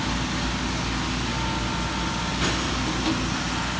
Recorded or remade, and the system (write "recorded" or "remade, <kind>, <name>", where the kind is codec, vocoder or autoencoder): recorded